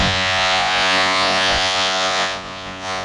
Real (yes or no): no